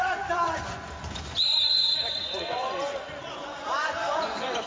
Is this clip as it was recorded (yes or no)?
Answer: no